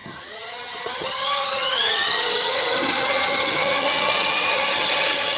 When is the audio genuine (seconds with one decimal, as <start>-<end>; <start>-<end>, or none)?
none